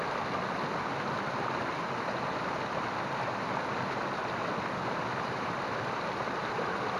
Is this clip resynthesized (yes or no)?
no